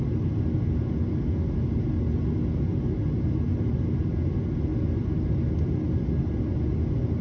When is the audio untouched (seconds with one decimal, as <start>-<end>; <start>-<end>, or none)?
0.0-7.2